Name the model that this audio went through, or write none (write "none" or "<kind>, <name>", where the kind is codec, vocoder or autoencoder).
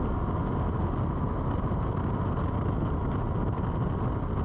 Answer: none